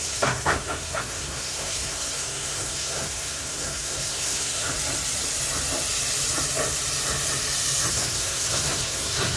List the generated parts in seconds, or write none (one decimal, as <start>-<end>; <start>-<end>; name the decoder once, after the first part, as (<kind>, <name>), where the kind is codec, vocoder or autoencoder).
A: 0.0-4.6 (codec, SNAC); 7.9-9.4